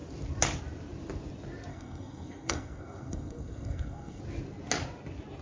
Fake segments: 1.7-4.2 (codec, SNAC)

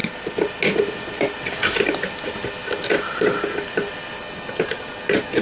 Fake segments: none